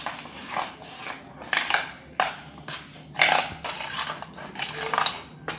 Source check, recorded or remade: recorded